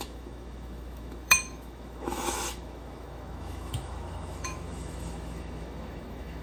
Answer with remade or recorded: remade